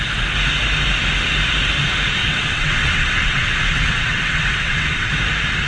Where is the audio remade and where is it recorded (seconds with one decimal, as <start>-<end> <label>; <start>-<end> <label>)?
0.0-2.2 recorded; 2.2-5.1 remade; 5.1-5.7 recorded